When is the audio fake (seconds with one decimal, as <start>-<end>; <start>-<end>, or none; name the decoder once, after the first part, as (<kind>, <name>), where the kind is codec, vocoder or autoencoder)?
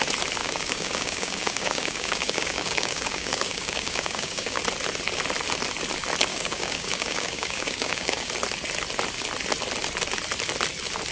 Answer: 0.4-4.6 (codec, DAC); 6.3-8.3